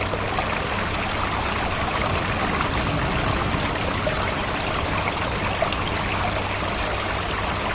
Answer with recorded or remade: recorded